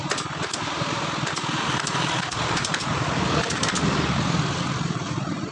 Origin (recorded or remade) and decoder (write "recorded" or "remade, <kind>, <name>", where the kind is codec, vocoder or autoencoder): remade, vocoder, BigVGAN v2